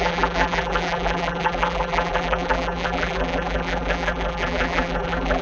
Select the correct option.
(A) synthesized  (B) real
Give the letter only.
A